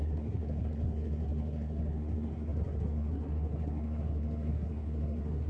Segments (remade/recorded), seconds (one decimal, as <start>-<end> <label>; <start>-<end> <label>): 0.0-5.5 remade